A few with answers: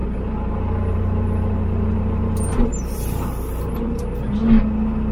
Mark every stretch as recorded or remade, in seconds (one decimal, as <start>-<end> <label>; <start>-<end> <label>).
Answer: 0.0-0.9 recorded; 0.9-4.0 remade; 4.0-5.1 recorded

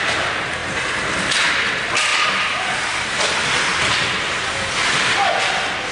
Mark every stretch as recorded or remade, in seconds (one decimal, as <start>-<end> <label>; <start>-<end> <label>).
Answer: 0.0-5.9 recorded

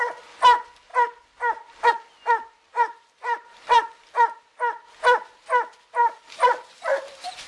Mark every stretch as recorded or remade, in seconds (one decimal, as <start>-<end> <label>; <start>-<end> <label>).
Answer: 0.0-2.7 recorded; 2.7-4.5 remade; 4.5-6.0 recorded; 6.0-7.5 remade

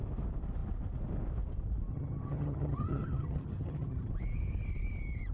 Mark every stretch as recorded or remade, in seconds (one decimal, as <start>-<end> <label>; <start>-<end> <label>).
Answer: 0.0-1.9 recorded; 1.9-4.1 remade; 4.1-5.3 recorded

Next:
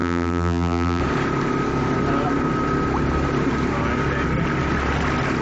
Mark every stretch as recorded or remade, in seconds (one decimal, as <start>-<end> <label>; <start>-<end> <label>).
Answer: 0.0-1.0 remade; 1.0-5.4 recorded

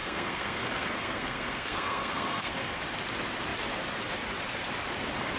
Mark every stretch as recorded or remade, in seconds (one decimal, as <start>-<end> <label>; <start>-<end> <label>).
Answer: 0.0-2.8 remade; 2.8-5.4 recorded